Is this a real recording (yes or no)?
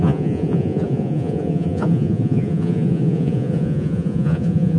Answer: no